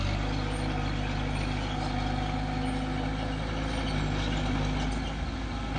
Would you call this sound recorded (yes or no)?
yes